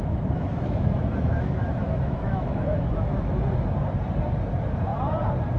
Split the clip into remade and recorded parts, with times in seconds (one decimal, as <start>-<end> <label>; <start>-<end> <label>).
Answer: 0.0-3.4 remade; 3.4-5.6 recorded